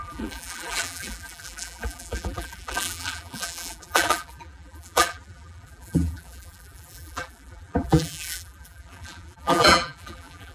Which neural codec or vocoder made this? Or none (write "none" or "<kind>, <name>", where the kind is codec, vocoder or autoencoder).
vocoder, BigVGAN v2